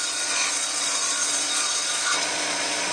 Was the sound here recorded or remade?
remade